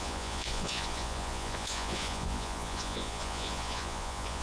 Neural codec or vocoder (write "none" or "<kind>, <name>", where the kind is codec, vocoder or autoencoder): vocoder, Vocos